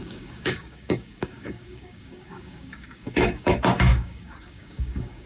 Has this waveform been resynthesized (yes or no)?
yes